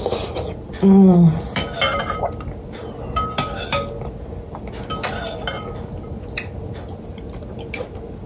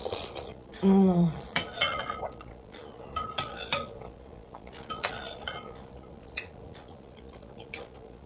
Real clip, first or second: first